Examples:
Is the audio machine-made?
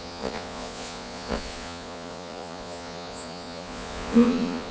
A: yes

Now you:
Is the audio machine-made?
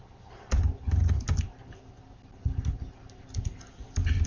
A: no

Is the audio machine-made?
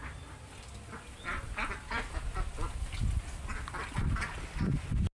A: no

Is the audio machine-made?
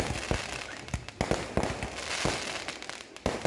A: no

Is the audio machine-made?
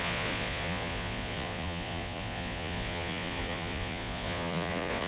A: yes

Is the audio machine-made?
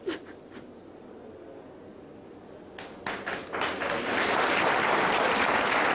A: no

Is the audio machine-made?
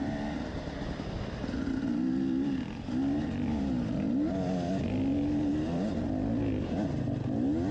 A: no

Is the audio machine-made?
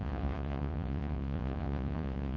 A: yes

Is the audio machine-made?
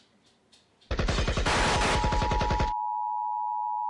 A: no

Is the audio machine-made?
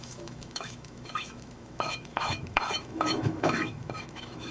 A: yes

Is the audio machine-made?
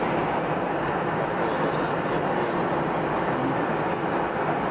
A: no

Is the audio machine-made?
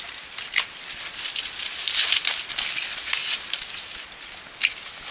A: no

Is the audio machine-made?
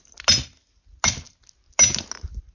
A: no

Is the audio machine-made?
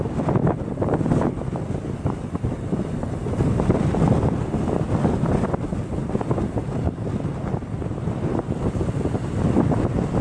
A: no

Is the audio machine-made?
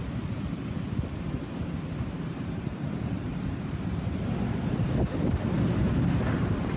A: no